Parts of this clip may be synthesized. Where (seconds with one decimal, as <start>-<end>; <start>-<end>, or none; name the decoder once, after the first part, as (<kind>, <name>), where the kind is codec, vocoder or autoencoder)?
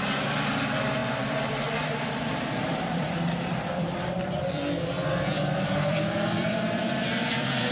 0.0-7.7 (vocoder, BigVGAN v2)